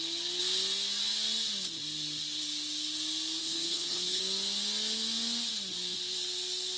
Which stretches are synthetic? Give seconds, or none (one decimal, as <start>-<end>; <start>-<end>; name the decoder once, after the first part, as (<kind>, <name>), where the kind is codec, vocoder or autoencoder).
3.4-4.2 (codec, HILCodec)